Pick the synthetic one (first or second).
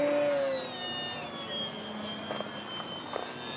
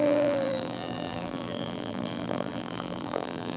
second